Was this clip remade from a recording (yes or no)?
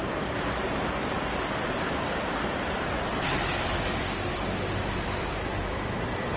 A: yes